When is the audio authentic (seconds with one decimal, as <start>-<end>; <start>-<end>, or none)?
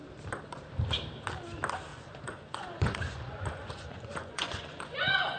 0.0-1.9